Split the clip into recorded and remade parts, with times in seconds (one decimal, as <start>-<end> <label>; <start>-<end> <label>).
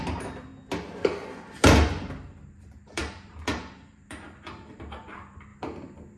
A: 0.0-0.5 remade; 0.5-2.5 recorded; 2.5-5.5 remade; 5.5-6.2 recorded